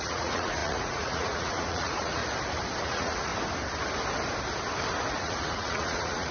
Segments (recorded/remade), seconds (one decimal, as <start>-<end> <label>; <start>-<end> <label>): 0.0-2.2 remade; 2.2-2.8 recorded; 2.8-3.3 remade; 3.3-5.1 recorded; 5.1-6.3 remade